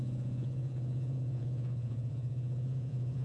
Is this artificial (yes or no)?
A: yes